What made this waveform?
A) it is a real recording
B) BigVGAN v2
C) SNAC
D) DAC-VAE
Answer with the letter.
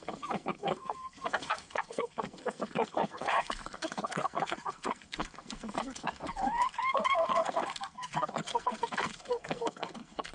C